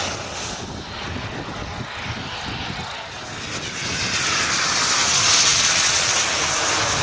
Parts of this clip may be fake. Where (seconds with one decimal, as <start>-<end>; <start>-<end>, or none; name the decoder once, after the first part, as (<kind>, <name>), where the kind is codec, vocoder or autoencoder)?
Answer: 5.5-6.1 (vocoder, Vocos)